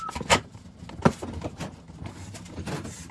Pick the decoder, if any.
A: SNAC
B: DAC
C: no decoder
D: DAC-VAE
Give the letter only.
C